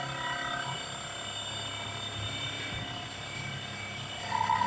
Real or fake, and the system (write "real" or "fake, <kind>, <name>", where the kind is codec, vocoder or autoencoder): real